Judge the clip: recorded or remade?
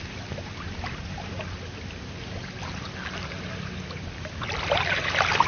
recorded